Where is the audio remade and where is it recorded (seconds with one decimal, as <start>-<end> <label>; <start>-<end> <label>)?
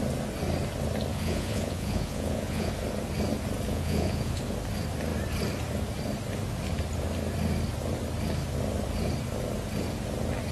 0.0-1.1 recorded; 1.1-2.7 remade; 2.7-3.7 recorded; 3.7-4.4 remade; 4.4-10.5 recorded